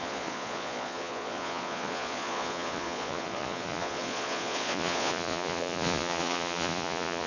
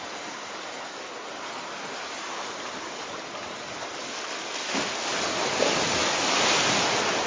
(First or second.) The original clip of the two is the second